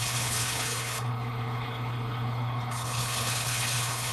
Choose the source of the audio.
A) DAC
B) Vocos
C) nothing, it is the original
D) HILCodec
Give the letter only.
D